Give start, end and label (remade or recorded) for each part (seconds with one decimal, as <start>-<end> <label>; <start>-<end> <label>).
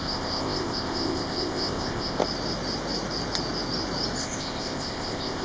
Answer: 0.0-2.2 remade; 2.2-4.2 recorded; 4.2-5.4 remade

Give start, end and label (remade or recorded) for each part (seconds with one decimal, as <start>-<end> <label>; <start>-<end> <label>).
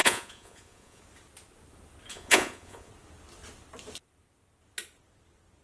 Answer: 0.0-1.0 remade; 1.0-2.1 recorded; 2.1-2.9 remade; 2.9-5.6 recorded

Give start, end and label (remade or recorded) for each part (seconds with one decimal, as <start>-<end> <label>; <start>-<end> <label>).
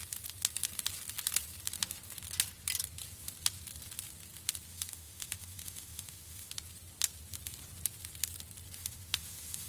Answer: 0.0-4.7 recorded; 4.7-6.5 remade; 6.5-8.8 recorded; 8.8-9.7 remade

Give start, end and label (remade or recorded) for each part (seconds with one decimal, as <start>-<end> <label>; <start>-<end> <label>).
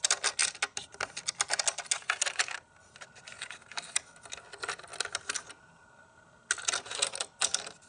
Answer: 0.0-7.9 recorded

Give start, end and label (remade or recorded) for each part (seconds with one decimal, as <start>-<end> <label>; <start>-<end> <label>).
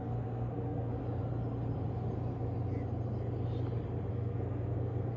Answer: 0.0-1.0 remade; 1.0-4.1 recorded; 4.1-5.2 remade